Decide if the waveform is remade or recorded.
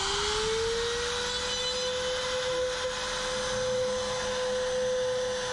recorded